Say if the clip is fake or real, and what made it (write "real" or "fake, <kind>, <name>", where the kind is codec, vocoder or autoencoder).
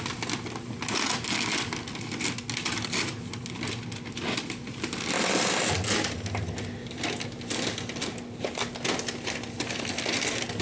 real